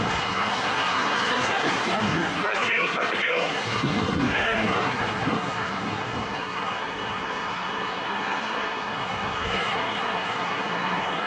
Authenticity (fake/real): fake